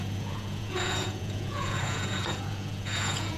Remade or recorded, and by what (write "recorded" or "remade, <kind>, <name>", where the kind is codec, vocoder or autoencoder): remade, vocoder, Vocos